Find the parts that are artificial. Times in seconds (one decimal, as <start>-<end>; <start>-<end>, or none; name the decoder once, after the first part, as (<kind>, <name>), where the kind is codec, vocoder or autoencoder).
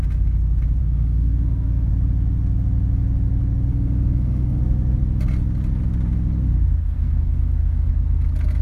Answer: 0.8-1.9 (codec, SNAC); 3.7-4.6; 6.8-7.9